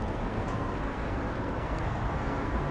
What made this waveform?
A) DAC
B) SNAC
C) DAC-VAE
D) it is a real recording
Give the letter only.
B